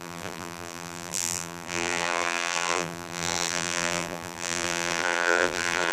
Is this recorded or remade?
remade